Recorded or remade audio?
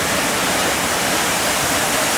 recorded